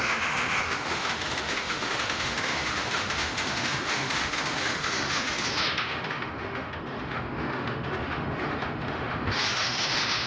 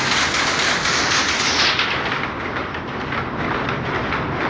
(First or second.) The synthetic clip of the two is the first